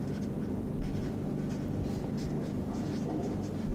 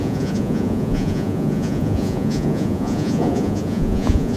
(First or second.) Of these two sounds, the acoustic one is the first